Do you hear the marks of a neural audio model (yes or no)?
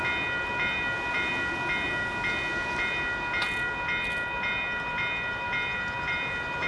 no